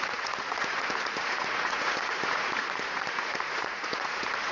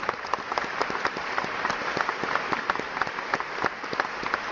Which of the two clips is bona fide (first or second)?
second